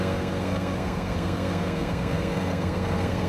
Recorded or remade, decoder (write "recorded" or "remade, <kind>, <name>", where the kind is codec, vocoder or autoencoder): remade, codec, SNAC